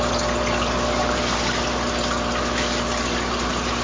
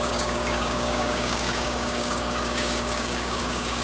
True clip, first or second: first